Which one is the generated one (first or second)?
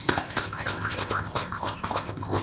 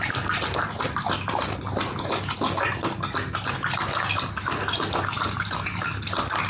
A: first